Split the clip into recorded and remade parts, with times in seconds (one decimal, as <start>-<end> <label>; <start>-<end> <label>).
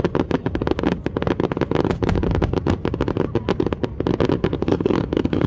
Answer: 0.0-4.4 recorded; 4.4-5.5 remade